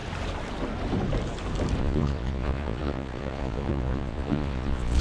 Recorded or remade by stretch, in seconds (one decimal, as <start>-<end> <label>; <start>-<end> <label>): 0.0-1.8 recorded; 1.8-5.0 remade